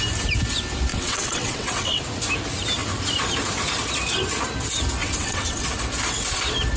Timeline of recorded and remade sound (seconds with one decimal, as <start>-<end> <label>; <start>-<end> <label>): 0.0-0.9 recorded; 0.9-2.0 remade; 2.0-5.0 recorded; 5.0-5.7 remade; 5.7-6.8 recorded